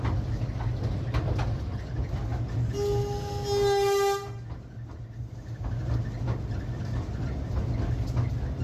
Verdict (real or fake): real